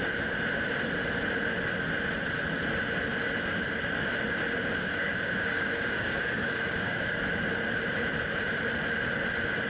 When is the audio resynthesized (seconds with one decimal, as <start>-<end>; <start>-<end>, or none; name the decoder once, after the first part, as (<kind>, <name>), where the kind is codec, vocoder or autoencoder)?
5.1-7.2 (codec, DAC)